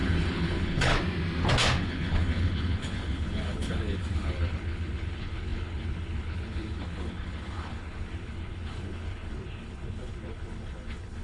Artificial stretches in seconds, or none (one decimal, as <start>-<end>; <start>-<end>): 0.0-0.9; 1.8-11.2